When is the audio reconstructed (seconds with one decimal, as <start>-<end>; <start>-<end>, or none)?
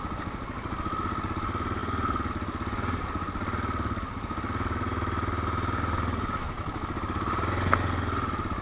none